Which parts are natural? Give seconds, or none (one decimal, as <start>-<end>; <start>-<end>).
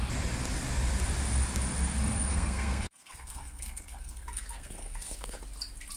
0.0-2.3; 5.4-6.0